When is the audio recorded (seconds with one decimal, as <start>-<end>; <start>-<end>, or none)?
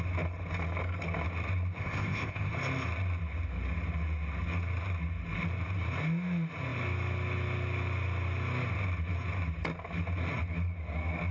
0.0-1.8; 2.5-11.3